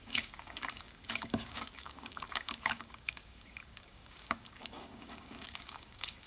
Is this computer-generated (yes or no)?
yes